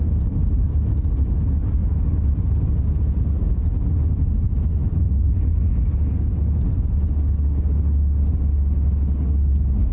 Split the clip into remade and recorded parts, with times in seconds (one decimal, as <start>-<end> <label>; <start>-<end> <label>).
0.0-9.9 recorded